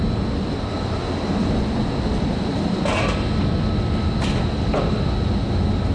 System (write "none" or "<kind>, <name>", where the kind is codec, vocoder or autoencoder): none